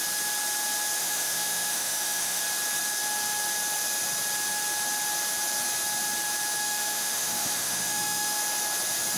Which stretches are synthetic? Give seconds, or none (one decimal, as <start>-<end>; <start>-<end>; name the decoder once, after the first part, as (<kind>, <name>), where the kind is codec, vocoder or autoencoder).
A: 1.0-2.4 (autoencoder, DAC-VAE); 6.6-8.4